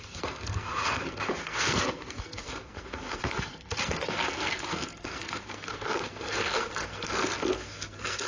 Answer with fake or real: fake